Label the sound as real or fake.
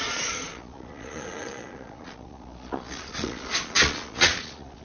fake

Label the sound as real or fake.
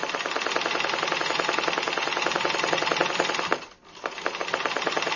real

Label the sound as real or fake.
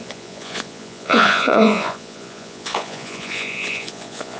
fake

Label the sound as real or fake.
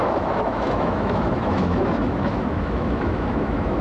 fake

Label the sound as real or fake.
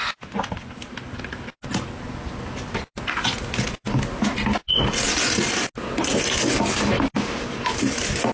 real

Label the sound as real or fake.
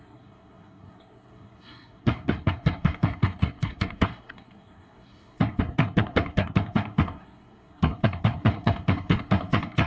fake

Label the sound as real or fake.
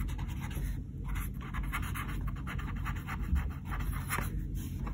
real